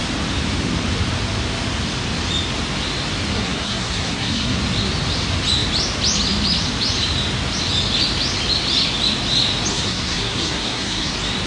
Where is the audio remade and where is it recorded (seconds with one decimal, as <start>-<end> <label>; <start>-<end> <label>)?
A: 0.0-3.3 recorded; 3.3-4.6 remade; 4.6-9.7 recorded; 9.7-11.1 remade; 11.1-11.5 recorded